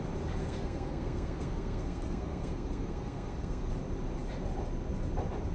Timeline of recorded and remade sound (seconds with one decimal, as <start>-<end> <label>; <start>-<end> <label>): 0.0-0.4 recorded; 0.4-3.7 remade; 3.7-5.5 recorded